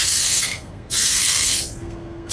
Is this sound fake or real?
fake